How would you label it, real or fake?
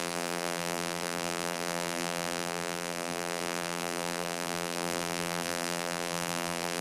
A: fake